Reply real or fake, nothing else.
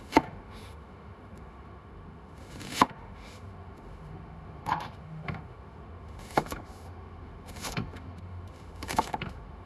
fake